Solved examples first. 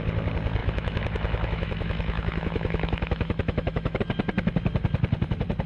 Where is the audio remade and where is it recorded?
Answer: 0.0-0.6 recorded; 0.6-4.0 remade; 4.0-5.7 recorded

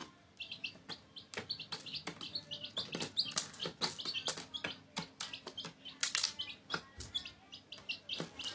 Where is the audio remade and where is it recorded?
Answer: 0.0-8.5 recorded

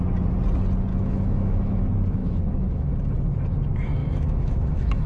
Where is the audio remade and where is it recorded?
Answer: 0.0-0.9 recorded; 0.9-1.8 remade; 1.8-2.2 recorded; 2.2-2.9 remade; 2.9-4.0 recorded; 4.0-5.1 remade

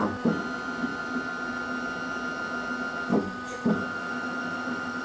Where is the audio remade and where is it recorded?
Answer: 0.0-3.1 recorded; 3.1-5.0 remade

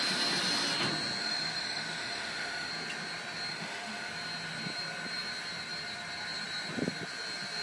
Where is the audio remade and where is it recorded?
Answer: 0.0-1.2 recorded; 1.2-2.7 remade; 2.7-3.5 recorded; 3.5-4.1 remade; 4.1-7.6 recorded

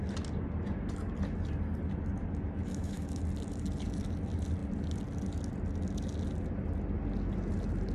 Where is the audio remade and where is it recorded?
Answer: 0.0-2.6 recorded; 2.6-3.2 remade; 3.2-7.9 recorded